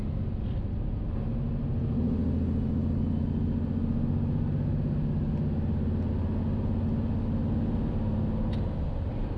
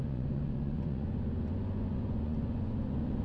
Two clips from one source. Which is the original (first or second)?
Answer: first